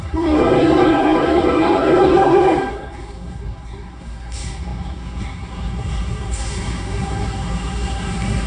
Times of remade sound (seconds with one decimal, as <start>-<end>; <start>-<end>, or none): 0.0-8.5